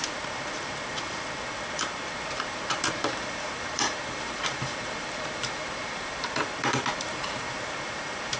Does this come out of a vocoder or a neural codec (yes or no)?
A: yes